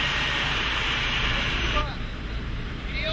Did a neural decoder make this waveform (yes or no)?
yes